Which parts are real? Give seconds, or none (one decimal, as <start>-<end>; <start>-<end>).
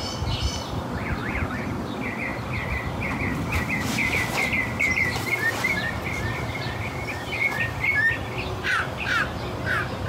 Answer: 0.0-1.2; 1.8-10.1